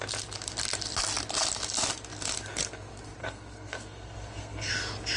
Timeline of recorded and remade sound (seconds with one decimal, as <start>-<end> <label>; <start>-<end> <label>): 0.0-3.2 recorded; 3.2-4.7 remade; 4.7-5.2 recorded